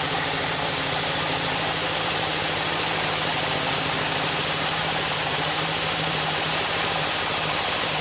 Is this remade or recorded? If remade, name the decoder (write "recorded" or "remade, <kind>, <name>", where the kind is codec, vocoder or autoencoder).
remade, vocoder, BigVGAN v2